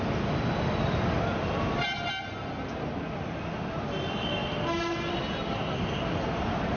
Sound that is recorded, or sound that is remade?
recorded